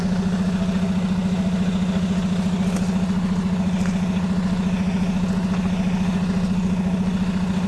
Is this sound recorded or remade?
recorded